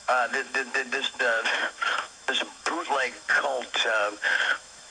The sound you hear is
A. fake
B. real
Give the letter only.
A